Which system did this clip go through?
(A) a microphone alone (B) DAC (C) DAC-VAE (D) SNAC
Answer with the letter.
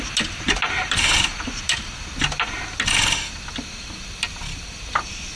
A